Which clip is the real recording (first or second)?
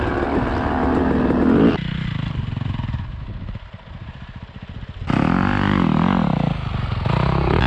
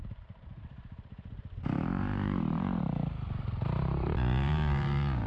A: first